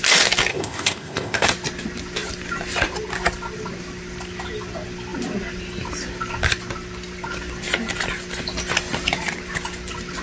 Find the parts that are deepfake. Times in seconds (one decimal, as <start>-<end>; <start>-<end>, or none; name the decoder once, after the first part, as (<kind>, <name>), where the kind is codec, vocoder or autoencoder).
0.5-1.5 (codec, ZipCodec)